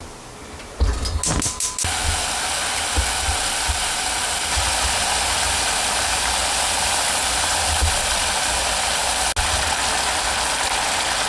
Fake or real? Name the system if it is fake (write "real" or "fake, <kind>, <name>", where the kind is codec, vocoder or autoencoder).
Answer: real